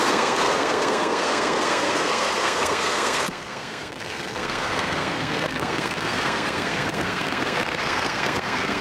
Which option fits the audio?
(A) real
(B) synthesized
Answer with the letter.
B